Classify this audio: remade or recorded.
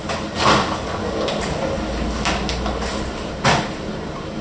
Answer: recorded